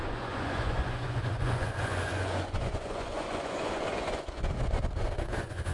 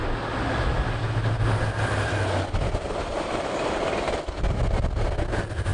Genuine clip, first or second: second